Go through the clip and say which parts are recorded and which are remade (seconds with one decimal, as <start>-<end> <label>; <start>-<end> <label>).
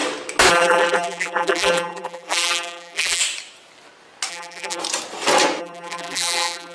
0.0-0.5 recorded; 0.5-3.2 remade; 3.2-4.3 recorded; 4.3-4.8 remade; 4.8-5.6 recorded; 5.6-6.7 remade